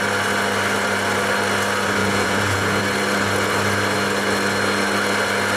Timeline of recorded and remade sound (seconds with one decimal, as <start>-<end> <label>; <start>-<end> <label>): 0.0-2.0 recorded; 2.0-2.8 remade; 2.8-5.6 recorded